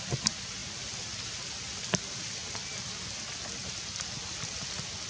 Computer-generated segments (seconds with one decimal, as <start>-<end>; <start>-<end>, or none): none